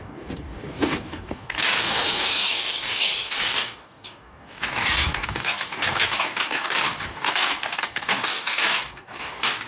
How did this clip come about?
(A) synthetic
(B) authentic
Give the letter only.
A